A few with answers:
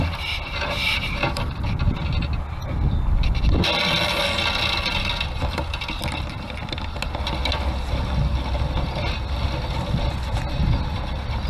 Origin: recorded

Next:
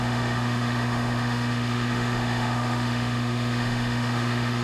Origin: remade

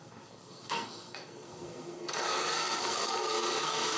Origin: remade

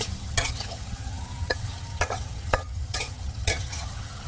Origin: remade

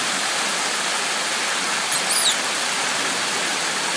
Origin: remade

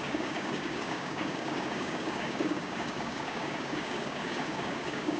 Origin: remade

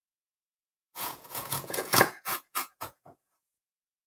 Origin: remade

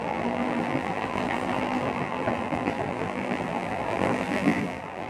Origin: remade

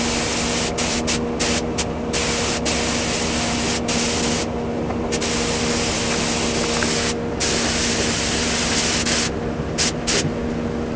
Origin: recorded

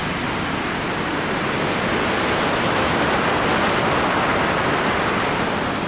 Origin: recorded